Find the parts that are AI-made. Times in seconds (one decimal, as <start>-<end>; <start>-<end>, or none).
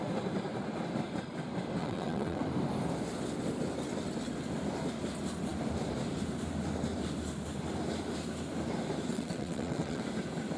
1.8-2.4; 9.1-10.0